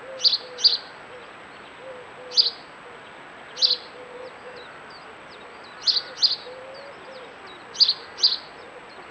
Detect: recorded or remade recorded